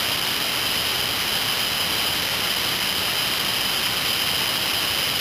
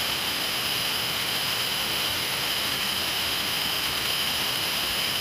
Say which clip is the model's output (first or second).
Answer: second